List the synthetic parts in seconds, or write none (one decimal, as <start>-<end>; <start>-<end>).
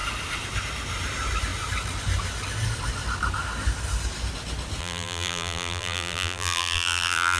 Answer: 4.8-7.4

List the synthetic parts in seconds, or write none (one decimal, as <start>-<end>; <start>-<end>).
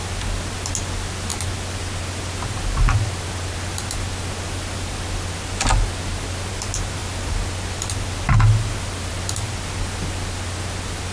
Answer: none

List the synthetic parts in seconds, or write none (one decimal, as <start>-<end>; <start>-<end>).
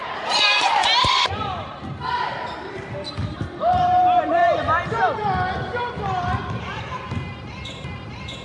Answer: 0.0-0.8; 1.4-4.4; 6.6-8.4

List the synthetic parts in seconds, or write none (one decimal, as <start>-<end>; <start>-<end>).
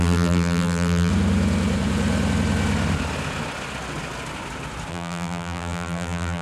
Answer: 0.0-1.1; 4.9-6.4